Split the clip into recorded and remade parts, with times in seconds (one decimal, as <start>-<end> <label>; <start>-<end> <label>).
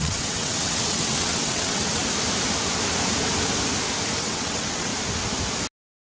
0.0-2.0 remade; 2.0-4.2 recorded; 4.2-4.9 remade; 4.9-6.1 recorded